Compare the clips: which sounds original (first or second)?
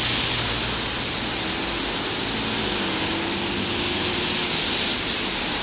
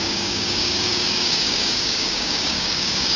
first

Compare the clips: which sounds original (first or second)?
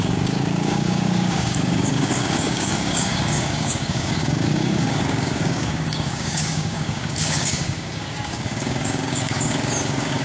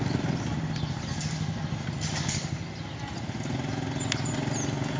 second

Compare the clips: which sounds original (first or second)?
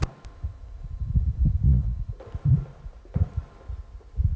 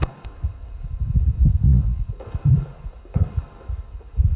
first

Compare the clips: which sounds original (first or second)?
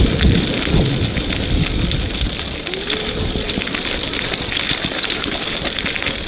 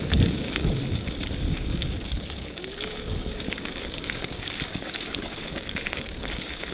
first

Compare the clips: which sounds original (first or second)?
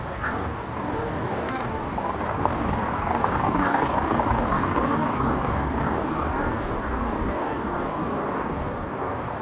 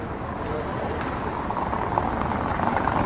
second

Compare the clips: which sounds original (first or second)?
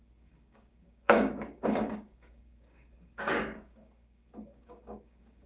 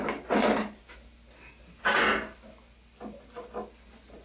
second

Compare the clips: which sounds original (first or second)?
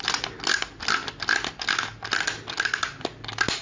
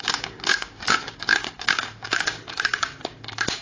first